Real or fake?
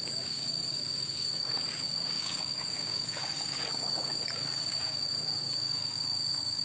fake